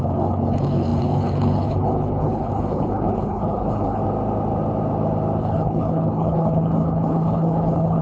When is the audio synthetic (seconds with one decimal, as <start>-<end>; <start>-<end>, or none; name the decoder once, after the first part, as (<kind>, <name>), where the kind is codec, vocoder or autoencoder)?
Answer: 0.0-4.0 (codec, HILCodec); 5.4-8.0

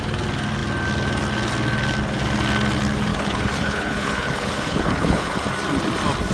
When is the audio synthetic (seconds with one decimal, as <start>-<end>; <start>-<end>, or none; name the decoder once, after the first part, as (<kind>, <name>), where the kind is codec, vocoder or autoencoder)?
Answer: 3.1-5.4 (codec, HILCodec)

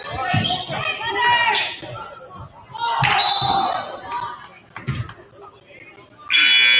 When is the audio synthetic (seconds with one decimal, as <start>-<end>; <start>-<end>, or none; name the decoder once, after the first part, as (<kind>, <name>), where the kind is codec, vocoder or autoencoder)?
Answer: none

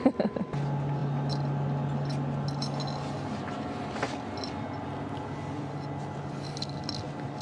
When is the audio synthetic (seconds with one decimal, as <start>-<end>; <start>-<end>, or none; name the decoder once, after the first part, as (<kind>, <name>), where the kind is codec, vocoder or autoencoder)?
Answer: none

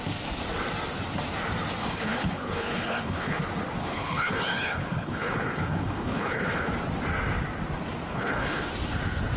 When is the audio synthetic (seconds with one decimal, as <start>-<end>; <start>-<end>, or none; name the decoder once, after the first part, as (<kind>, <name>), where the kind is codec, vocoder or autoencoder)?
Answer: 1.8-3.4 (codec, HILCodec); 3.8-6.7; 8.1-8.7